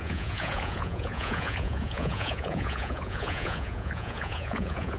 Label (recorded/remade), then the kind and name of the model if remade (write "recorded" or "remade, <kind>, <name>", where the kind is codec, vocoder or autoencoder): remade, vocoder, Vocos